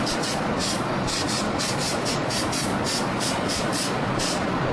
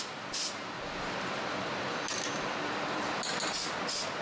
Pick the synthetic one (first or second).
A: first